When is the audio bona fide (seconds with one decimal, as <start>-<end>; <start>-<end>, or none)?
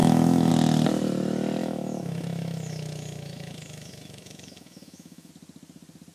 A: 0.5-1.6; 5.3-6.1